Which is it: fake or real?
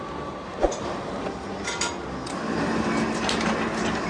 real